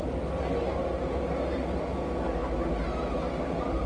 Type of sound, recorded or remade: recorded